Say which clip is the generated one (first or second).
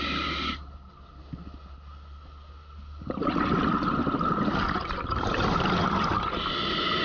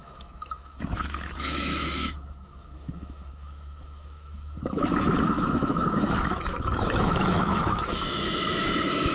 second